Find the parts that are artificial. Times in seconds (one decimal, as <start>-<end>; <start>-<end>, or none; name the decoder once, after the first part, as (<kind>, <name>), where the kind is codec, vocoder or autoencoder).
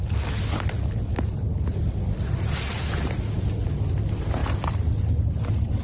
none